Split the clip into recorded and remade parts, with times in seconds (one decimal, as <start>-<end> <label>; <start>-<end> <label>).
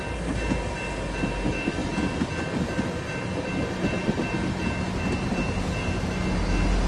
0.0-6.9 recorded